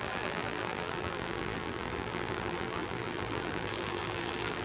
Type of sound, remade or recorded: remade